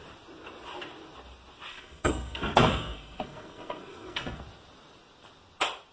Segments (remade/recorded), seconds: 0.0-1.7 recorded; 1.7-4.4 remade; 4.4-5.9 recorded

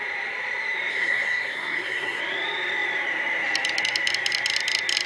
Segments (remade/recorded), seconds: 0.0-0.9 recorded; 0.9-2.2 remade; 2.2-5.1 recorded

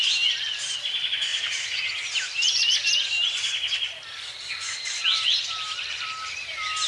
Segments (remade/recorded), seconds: 0.0-6.9 recorded

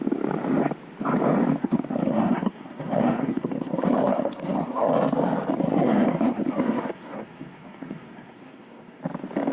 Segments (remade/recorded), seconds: 0.0-1.6 recorded; 1.6-4.9 remade; 4.9-5.6 recorded; 5.6-9.0 remade; 9.0-9.5 recorded

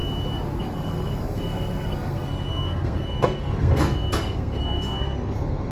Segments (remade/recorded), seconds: 0.0-0.6 recorded; 0.6-5.7 remade

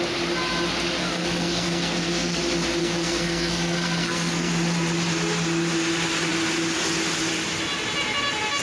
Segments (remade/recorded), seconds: 0.0-1.0 recorded; 1.0-2.4 remade; 2.4-2.8 recorded; 2.8-4.5 remade; 4.5-8.6 recorded

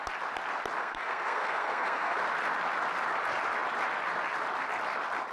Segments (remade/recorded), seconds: 0.0-0.8 recorded; 0.8-2.2 remade; 2.2-5.3 recorded